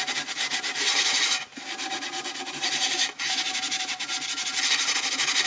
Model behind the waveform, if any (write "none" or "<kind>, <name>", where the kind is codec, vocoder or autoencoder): none